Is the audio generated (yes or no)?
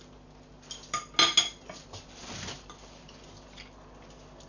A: no